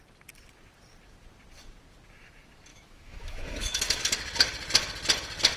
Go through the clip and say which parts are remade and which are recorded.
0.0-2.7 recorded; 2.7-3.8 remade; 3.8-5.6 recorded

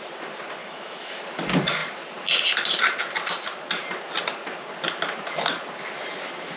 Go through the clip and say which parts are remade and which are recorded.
0.0-0.6 recorded; 0.6-1.2 remade; 1.2-6.6 recorded